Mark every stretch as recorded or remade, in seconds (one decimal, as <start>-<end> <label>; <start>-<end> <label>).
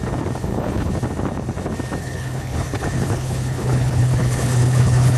0.0-0.4 recorded; 0.4-0.9 remade; 0.9-2.0 recorded; 2.0-5.2 remade